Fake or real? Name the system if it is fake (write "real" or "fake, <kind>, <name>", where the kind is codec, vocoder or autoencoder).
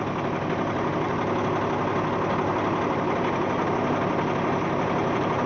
real